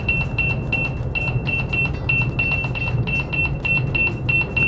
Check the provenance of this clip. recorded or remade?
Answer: recorded